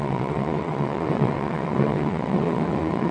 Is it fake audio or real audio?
fake